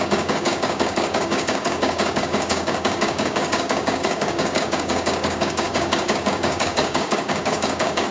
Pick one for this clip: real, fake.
fake